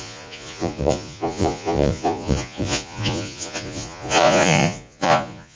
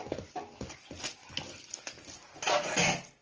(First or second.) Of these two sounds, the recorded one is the second